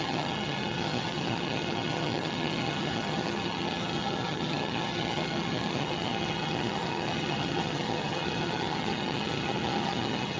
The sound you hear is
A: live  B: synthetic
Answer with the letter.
B